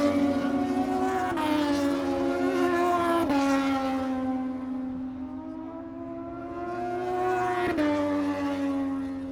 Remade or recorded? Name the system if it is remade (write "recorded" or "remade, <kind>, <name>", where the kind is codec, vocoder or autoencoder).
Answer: recorded